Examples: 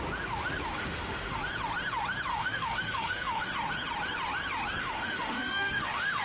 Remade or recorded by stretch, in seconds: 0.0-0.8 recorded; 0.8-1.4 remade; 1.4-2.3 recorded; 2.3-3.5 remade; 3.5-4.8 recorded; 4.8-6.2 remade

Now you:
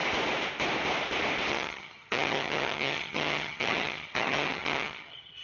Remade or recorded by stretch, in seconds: 0.0-1.5 recorded; 1.5-5.4 remade